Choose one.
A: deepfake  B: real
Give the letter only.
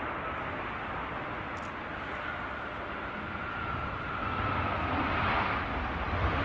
B